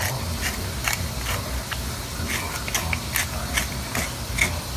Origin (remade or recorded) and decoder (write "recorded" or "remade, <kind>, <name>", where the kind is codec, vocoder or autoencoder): recorded